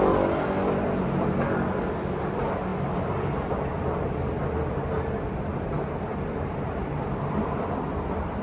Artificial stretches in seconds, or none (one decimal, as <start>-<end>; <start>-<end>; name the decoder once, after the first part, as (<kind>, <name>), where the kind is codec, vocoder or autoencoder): 5.5-7.0 (vocoder, BigVGAN v2)